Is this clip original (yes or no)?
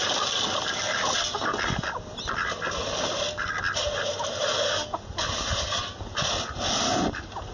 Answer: yes